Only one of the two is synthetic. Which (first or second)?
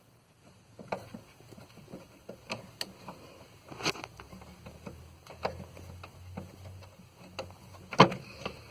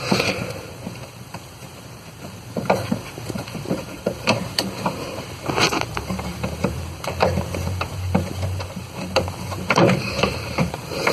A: second